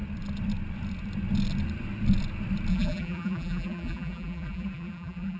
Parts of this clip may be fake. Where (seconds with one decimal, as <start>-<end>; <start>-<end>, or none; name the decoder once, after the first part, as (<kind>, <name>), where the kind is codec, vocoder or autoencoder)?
2.7-5.4 (vocoder, BigVGAN v2)